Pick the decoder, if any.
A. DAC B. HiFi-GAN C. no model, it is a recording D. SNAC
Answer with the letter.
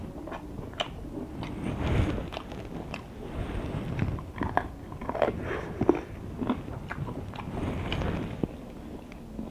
C